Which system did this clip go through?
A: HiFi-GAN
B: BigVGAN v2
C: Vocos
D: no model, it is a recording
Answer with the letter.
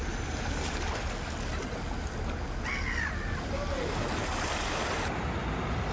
D